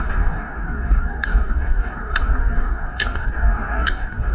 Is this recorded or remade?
remade